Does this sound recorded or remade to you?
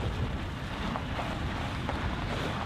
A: recorded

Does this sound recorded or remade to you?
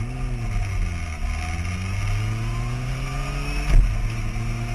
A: recorded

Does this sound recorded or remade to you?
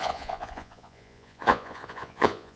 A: remade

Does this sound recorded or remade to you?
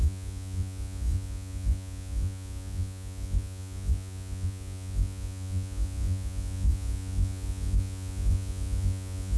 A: remade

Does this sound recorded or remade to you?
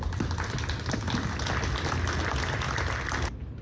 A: recorded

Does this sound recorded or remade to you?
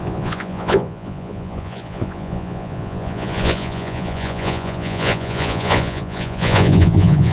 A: remade